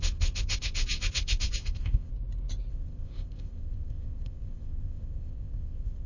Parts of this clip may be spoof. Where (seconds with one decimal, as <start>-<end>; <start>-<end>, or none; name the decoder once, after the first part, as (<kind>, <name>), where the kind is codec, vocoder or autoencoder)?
0.0-2.1 (codec, ZipCodec); 2.7-6.1